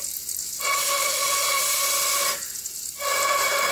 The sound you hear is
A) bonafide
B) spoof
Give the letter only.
B